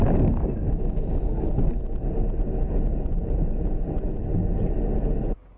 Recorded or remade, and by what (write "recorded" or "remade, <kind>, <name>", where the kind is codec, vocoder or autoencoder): recorded